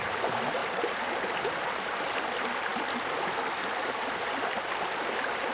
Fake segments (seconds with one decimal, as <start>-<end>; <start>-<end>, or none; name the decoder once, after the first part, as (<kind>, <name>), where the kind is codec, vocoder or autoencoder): none